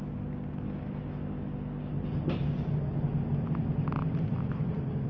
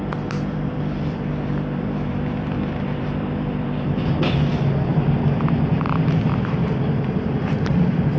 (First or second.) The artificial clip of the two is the second